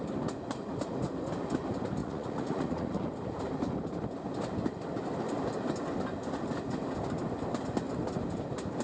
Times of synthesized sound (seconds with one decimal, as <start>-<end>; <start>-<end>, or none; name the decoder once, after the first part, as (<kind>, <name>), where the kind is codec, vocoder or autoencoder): 2.0-3.0 (vocoder, Vocos)